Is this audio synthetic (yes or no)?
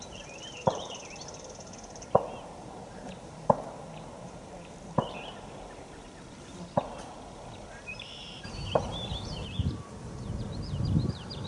yes